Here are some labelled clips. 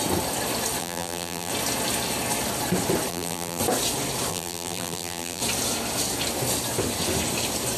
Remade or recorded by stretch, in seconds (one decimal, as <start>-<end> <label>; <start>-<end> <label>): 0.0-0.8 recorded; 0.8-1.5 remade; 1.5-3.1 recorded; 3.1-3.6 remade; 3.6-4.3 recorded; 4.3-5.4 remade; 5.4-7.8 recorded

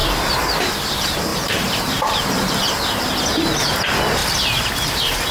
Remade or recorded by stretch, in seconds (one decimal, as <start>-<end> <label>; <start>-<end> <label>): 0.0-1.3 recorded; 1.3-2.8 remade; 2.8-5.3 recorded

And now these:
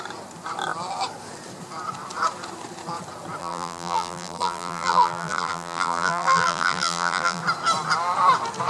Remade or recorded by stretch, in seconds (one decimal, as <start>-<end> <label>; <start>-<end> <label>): 0.0-3.4 recorded; 3.4-7.4 remade; 7.4-8.7 recorded